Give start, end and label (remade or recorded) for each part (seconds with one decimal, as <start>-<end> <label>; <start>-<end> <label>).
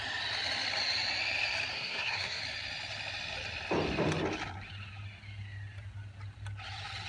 0.0-1.7 recorded; 1.7-2.4 remade; 2.4-7.1 recorded